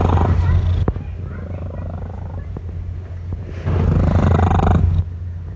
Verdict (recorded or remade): recorded